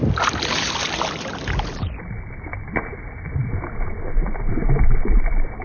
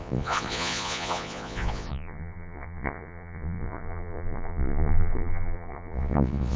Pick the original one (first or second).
first